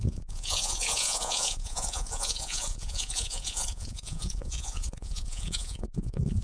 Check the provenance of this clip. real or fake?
fake